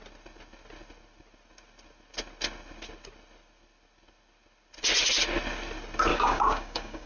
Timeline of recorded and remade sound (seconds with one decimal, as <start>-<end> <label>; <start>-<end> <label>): 0.0-6.1 recorded; 6.1-7.1 remade

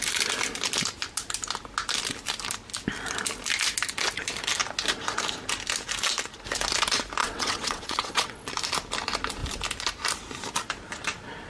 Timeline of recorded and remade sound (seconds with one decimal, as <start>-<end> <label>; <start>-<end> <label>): 0.0-7.2 recorded; 7.2-8.5 remade; 8.5-11.5 recorded

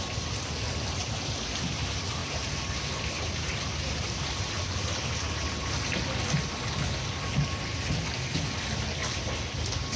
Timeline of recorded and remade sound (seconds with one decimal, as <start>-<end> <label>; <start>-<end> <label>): 0.0-10.0 recorded

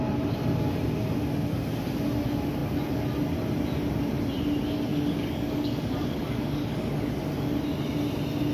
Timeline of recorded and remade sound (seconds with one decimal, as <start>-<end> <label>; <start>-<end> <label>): 0.0-4.9 recorded; 4.9-7.1 remade; 7.1-8.5 recorded

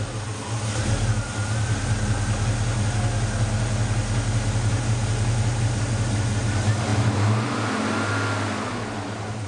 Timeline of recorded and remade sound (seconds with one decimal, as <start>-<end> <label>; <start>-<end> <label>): 0.0-9.5 recorded

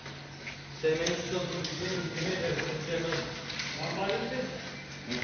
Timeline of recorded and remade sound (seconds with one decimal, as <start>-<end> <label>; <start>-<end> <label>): 0.0-5.2 recorded

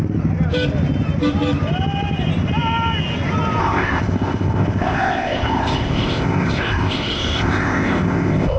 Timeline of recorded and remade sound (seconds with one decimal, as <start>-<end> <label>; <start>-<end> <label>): 0.0-3.6 recorded; 3.6-8.6 remade